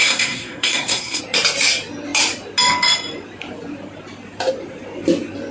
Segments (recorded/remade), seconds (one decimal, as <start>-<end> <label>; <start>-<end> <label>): 0.0-1.2 remade; 1.2-5.5 recorded